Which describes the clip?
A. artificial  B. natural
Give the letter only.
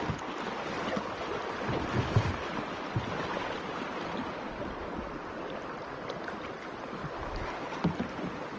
B